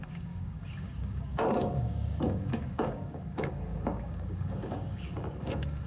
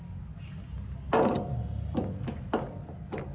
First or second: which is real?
second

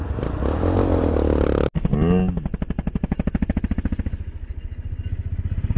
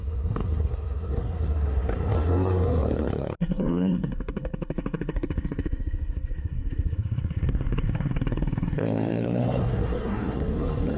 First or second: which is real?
first